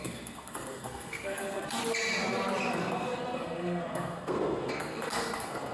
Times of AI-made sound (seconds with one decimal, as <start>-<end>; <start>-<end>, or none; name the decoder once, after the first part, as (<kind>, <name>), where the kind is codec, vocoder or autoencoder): 0.0-1.8 (codec, SNAC); 2.7-5.7